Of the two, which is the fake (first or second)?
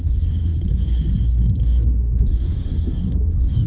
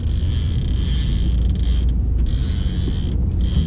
first